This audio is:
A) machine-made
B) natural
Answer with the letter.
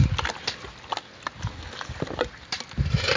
B